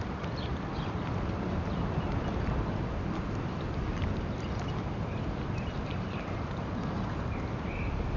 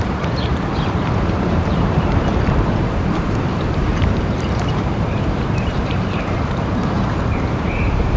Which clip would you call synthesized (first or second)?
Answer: second